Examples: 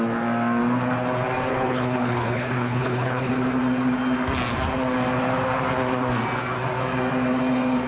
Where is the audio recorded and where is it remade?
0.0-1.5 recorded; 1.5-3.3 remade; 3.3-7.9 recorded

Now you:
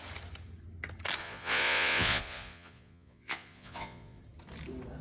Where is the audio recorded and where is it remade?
0.0-1.2 recorded; 1.2-4.2 remade; 4.2-5.0 recorded

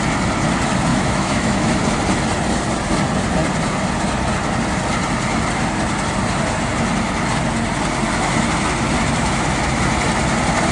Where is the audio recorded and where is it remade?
0.0-0.9 recorded; 0.9-1.8 remade; 1.8-10.7 recorded